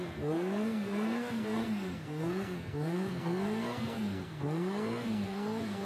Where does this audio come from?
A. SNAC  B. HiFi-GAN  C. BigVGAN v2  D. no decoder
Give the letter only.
A